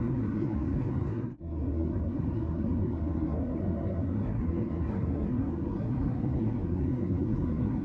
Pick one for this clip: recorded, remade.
remade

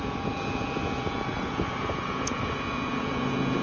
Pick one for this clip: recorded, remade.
remade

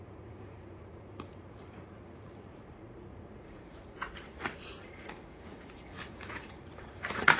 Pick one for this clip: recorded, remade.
remade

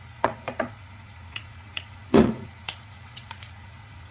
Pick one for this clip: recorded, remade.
remade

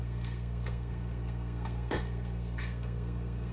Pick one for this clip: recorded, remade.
remade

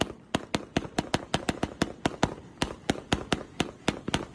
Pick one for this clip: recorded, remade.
recorded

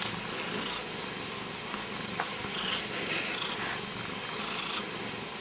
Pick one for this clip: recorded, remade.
recorded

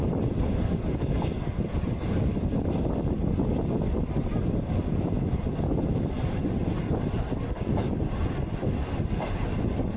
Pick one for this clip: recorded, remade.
remade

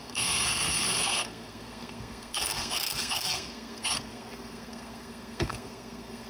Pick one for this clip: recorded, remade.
remade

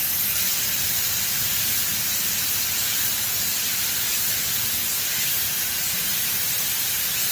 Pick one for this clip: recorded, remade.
remade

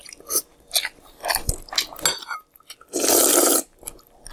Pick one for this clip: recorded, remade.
recorded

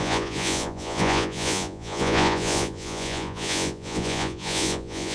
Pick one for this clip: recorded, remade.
remade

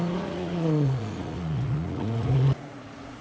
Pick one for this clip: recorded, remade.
remade